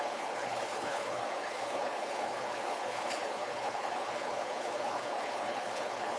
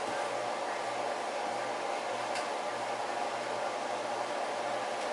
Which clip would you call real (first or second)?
second